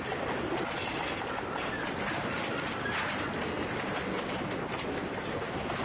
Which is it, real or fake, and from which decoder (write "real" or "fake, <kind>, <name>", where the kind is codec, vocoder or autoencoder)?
real